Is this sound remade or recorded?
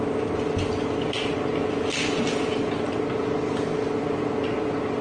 recorded